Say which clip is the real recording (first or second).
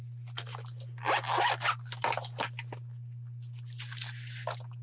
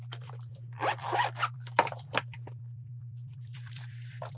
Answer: first